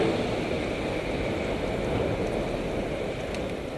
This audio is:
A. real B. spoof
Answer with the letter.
A